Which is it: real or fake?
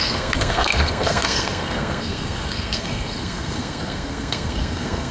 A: fake